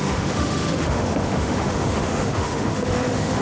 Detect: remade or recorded remade